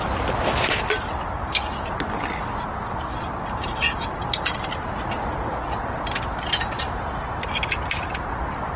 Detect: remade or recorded recorded